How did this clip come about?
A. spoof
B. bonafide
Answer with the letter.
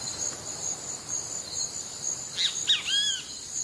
B